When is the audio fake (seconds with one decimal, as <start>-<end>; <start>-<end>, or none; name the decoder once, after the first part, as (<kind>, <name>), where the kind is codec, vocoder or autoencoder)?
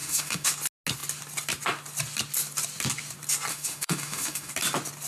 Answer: 0.0-0.5 (autoencoder, DAC-VAE); 3.5-4.5